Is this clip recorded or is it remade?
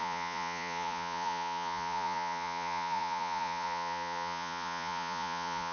remade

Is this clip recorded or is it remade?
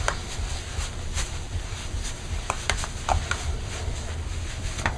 recorded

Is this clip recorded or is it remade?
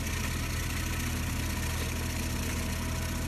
recorded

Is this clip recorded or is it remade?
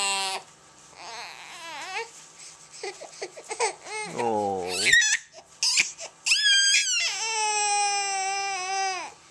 recorded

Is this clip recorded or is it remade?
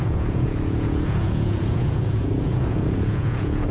remade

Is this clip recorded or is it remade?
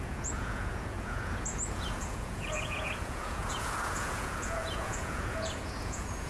remade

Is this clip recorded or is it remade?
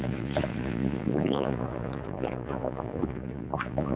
remade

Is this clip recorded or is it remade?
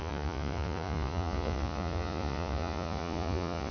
remade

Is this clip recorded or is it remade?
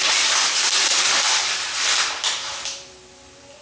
recorded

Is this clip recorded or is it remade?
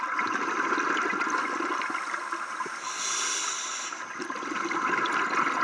recorded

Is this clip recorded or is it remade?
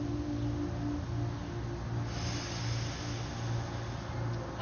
recorded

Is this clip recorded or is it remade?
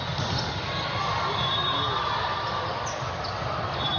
recorded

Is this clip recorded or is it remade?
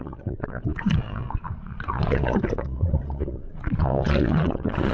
remade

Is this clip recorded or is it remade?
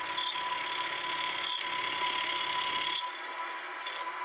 recorded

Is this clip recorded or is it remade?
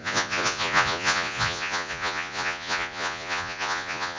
remade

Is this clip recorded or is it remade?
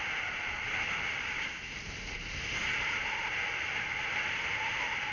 recorded